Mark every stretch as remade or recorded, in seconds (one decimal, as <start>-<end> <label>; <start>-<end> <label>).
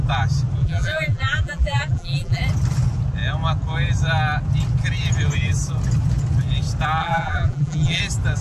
0.0-0.6 recorded; 0.6-2.4 remade; 2.4-7.0 recorded; 7.0-8.0 remade; 8.0-8.4 recorded